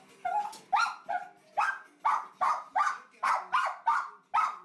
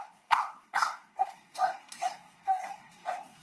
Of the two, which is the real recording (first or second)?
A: first